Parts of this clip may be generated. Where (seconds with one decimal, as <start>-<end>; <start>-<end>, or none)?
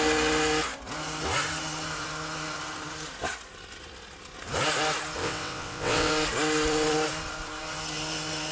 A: 5.2-6.1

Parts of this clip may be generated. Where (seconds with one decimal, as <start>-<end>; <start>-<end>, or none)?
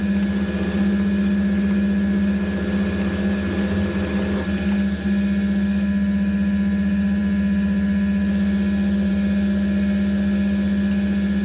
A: none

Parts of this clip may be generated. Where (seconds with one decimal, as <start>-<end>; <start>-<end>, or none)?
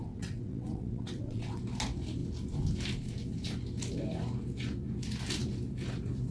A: 0.0-1.6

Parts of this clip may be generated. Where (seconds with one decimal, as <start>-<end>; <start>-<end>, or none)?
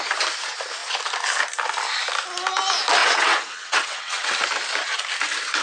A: 3.0-4.3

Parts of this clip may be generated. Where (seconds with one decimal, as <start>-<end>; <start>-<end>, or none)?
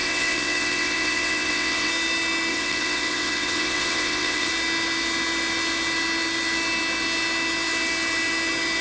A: 0.0-1.9; 2.5-4.5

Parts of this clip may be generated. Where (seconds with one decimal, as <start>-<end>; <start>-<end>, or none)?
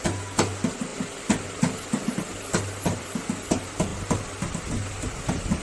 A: none